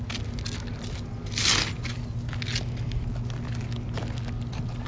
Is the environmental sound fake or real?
real